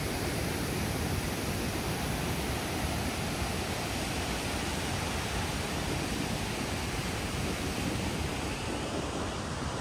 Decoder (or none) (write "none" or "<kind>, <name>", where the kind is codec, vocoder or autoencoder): vocoder, BigVGAN v2